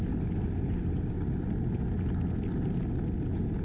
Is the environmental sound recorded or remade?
recorded